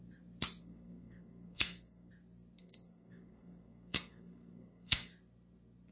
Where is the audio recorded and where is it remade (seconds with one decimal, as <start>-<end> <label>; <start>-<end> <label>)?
0.0-0.6 recorded; 0.6-2.1 remade; 2.1-2.6 recorded; 2.6-5.1 remade; 5.1-5.9 recorded